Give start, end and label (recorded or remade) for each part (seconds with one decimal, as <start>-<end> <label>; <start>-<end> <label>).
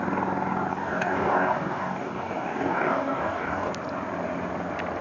0.0-0.7 recorded; 0.7-3.7 remade; 3.7-5.0 recorded